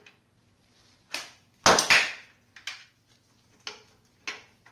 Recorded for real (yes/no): yes